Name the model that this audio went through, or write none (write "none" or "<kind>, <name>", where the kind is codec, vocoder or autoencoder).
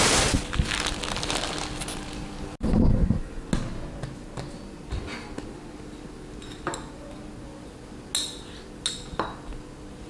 none